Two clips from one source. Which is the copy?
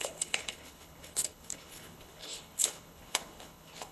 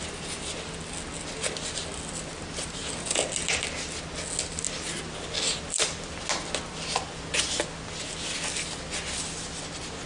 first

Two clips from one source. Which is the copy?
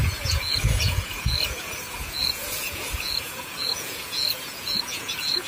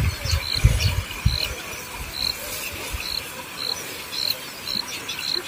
first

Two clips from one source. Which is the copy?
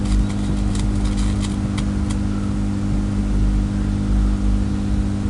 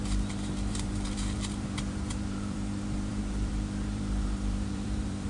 second